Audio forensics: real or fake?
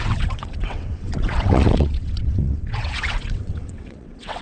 fake